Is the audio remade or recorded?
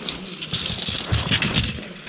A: recorded